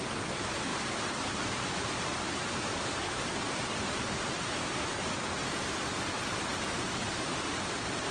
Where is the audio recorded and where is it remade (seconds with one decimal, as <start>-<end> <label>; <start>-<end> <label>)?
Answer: 0.0-0.7 recorded; 0.7-5.6 remade; 5.6-6.5 recorded; 6.5-8.1 remade